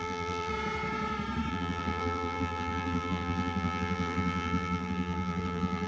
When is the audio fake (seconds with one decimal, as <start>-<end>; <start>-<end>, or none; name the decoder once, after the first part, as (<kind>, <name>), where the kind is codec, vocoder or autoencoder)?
0.0-0.5 (vocoder, BigVGAN v2); 1.5-5.9